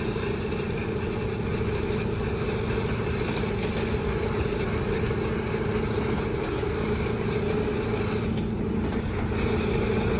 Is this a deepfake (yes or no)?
no